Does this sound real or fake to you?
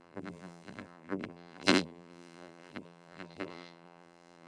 fake